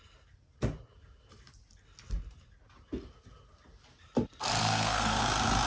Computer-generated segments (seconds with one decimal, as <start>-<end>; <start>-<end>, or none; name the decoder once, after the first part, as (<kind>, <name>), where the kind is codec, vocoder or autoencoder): 4.6-5.2 (codec, SNAC)